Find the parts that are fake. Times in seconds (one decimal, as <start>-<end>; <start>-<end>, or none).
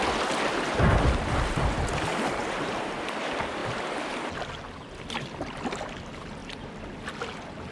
2.4-2.9